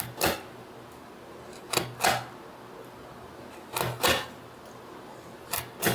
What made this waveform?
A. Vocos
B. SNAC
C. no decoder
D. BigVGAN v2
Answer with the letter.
C